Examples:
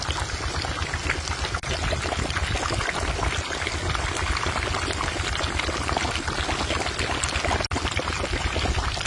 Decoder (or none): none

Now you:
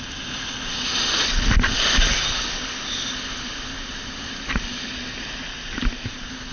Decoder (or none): none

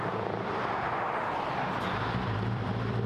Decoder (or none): vocoder, BigVGAN v2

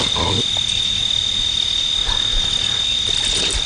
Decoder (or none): none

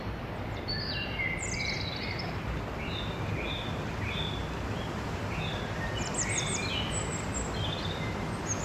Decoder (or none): none